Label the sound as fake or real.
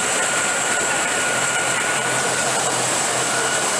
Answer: fake